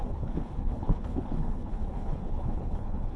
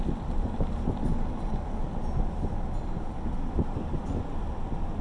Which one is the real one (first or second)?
second